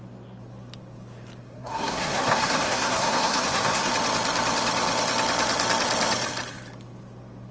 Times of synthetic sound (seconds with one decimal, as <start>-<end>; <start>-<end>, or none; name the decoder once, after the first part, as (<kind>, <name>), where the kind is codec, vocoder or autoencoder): 1.4-3.9 (codec, SNAC)